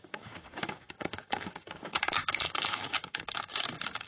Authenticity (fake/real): fake